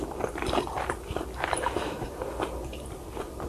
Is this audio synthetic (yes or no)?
no